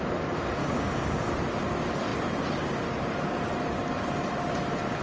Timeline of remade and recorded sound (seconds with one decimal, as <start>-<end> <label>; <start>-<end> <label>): 0.0-0.6 recorded; 0.6-1.3 remade; 1.3-5.0 recorded